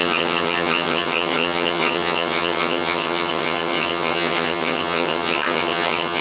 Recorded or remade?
remade